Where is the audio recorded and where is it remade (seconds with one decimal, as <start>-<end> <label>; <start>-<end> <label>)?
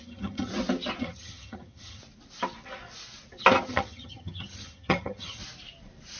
0.0-0.5 remade; 0.5-1.0 recorded; 1.0-2.0 remade; 2.0-3.7 recorded; 3.7-5.4 remade; 5.4-6.2 recorded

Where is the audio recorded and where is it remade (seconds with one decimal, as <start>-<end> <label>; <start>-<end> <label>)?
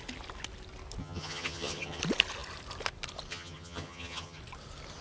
0.0-1.0 recorded; 1.0-2.0 remade; 2.0-3.3 recorded; 3.3-4.4 remade; 4.4-5.0 recorded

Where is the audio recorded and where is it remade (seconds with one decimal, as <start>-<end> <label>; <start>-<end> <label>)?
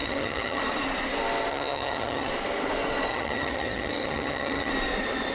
0.0-0.6 remade; 0.6-1.5 recorded; 1.5-2.3 remade; 2.3-3.1 recorded; 3.1-4.7 remade; 4.7-5.3 recorded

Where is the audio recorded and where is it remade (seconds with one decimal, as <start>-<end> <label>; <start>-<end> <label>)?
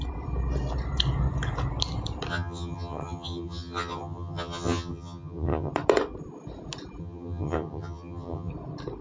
0.0-2.3 recorded; 2.3-5.7 remade; 5.7-7.0 recorded; 7.0-8.5 remade; 8.5-9.0 recorded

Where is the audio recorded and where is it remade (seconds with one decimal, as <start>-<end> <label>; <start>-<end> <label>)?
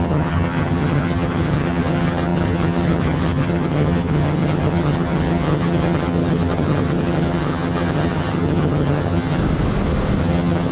0.0-9.4 remade; 9.4-10.2 recorded; 10.2-10.7 remade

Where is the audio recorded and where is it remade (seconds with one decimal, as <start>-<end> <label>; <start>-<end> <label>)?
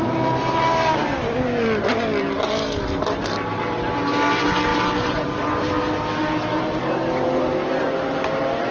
0.0-8.7 recorded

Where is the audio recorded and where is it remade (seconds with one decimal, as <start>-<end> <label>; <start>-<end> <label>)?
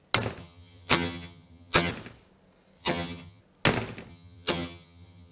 0.0-0.4 recorded; 0.4-1.9 remade; 1.9-2.8 recorded; 2.8-3.4 remade; 3.4-4.1 recorded; 4.1-5.3 remade